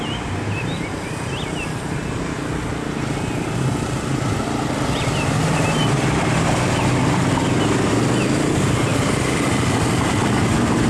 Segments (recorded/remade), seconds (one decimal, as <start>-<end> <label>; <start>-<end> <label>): 0.0-10.9 recorded